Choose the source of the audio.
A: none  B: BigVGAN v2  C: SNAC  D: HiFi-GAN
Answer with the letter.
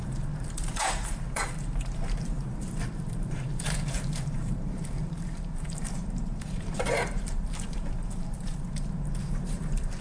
B